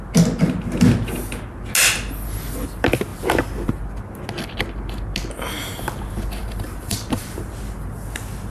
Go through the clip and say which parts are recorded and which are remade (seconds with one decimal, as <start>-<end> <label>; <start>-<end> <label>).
0.0-6.4 recorded; 6.4-7.5 remade; 7.5-8.5 recorded